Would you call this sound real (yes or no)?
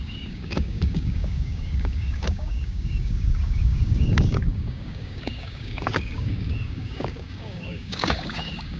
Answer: no